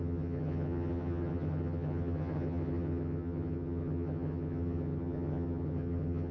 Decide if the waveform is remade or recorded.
remade